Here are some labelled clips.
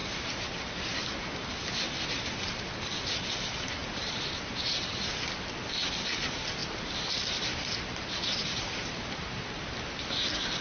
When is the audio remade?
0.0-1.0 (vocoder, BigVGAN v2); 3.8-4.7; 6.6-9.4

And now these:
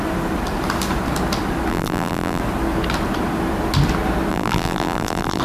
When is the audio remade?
1.7-2.4 (vocoder, BigVGAN v2); 4.3-5.4

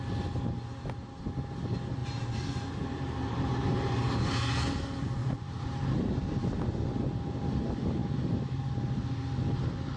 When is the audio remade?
2.0-4.1 (vocoder, BigVGAN v2); 5.2-6.3; 8.0-8.7

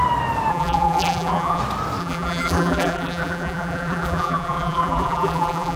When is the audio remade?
0.5-1.6 (vocoder, BigVGAN v2); 2.0-5.8